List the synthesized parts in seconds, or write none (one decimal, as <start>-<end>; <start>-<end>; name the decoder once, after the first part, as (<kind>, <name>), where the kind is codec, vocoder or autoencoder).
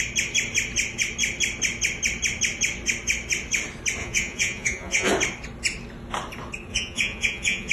4.0-5.1 (vocoder, Vocos); 6.7-7.7